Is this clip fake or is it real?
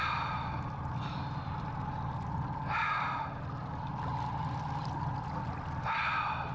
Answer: real